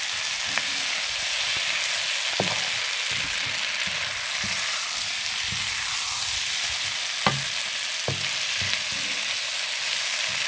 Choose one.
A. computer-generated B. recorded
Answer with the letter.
B